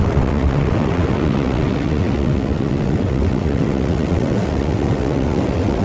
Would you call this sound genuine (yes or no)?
no